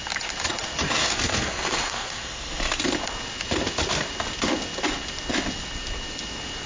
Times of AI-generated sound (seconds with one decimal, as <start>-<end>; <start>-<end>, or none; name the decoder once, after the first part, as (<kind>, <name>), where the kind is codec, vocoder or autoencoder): 1.0-2.8 (codec, SNAC)